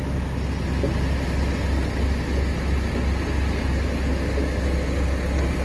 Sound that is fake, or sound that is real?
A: real